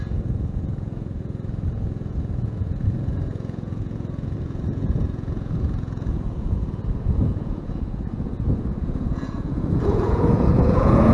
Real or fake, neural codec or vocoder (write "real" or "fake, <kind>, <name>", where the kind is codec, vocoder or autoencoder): fake, vocoder, Vocos